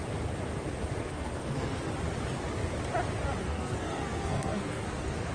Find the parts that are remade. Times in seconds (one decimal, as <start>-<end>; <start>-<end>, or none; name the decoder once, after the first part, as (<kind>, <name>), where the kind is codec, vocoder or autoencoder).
1.0-1.9 (codec, SNAC); 3.4-5.3